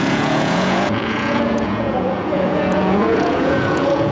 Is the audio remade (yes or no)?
yes